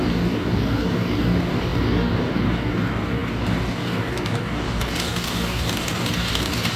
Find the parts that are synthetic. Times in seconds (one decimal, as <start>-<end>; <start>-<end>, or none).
0.0-6.8